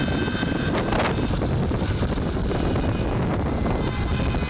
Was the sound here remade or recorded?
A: recorded